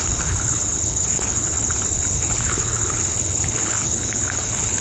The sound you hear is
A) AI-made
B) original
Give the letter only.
A